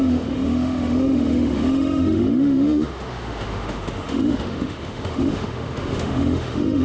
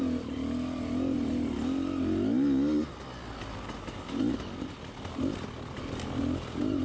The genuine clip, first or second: second